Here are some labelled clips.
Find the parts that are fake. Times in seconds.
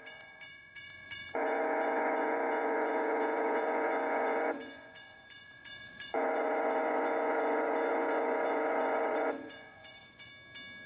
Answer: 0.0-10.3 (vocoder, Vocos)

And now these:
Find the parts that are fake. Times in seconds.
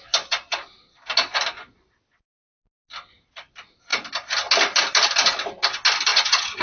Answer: 6.1-6.6 (vocoder, Vocos)